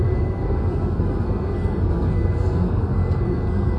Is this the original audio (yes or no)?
no